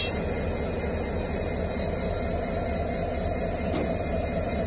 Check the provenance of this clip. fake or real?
real